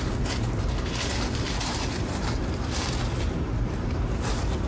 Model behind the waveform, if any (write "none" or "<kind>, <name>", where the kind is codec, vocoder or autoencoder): vocoder, BigVGAN v2